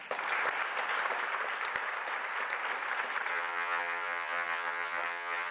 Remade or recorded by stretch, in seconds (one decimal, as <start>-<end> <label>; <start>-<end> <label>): 0.0-3.3 recorded; 3.3-5.5 remade